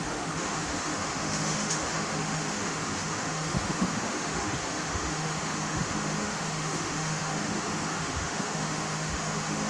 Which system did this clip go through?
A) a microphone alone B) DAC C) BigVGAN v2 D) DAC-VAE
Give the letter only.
D